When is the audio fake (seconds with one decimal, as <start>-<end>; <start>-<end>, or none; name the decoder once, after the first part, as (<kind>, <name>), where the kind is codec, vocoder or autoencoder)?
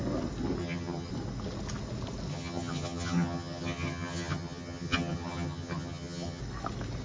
0.6-1.1 (vocoder, HiFi-GAN); 2.3-6.4